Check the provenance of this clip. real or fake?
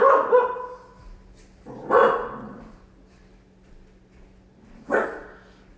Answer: real